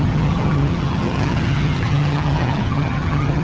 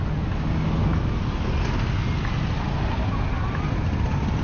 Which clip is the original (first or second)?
second